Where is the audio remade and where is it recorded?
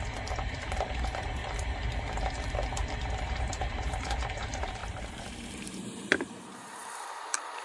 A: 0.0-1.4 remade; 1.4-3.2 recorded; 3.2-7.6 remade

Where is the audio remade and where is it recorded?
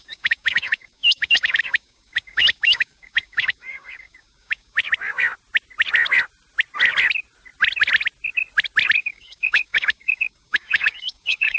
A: 0.0-4.8 remade; 4.8-9.0 recorded; 9.0-11.6 remade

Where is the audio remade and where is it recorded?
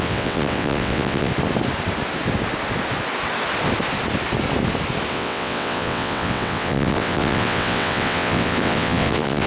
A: 0.0-1.3 remade; 1.3-5.1 recorded; 5.1-9.5 remade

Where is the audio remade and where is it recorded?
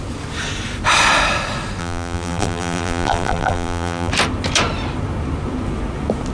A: 0.0-1.8 recorded; 1.8-4.1 remade; 4.1-6.3 recorded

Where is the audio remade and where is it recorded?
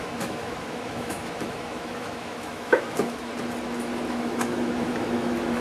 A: 0.0-3.3 remade; 3.3-4.1 recorded; 4.1-5.6 remade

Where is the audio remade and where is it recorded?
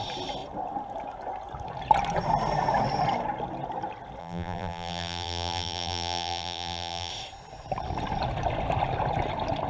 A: 0.0-4.2 recorded; 4.2-7.1 remade; 7.1-9.7 recorded